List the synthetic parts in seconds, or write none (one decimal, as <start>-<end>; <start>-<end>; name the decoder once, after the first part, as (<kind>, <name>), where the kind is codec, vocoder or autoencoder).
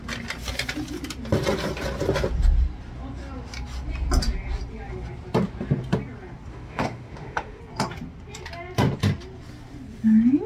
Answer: 6.5-7.6 (autoencoder, DAC-VAE)